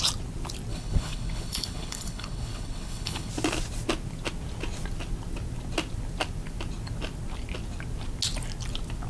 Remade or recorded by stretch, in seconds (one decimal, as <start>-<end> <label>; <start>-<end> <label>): 0.0-0.7 recorded; 0.7-3.3 remade; 3.3-9.1 recorded